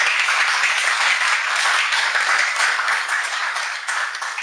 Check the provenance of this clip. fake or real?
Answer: fake